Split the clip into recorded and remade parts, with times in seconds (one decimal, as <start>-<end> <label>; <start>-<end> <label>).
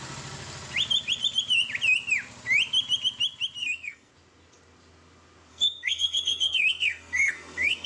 0.0-3.6 recorded; 3.6-4.1 remade; 4.1-5.5 recorded; 5.5-7.9 remade